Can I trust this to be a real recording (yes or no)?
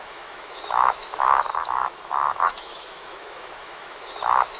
no